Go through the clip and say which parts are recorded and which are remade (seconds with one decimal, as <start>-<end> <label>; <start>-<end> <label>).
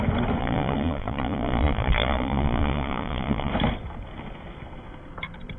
0.0-0.4 recorded; 0.4-3.5 remade; 3.5-5.6 recorded